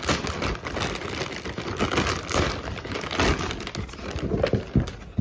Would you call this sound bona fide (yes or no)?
yes